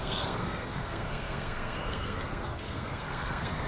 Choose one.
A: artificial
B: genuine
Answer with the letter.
A